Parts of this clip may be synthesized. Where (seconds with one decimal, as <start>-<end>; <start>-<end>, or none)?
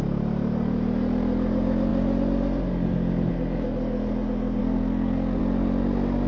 4.6-5.4